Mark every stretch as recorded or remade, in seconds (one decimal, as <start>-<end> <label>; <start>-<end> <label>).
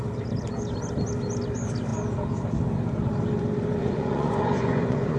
0.0-3.8 recorded; 3.8-5.2 remade